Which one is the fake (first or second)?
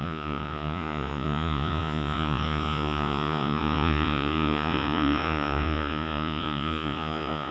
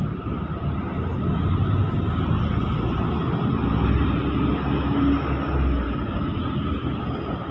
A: first